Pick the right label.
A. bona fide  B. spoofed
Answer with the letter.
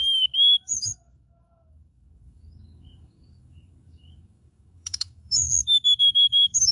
B